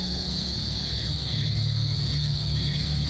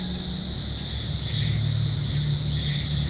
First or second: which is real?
second